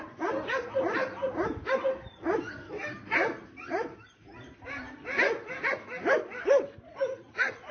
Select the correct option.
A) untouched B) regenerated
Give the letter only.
A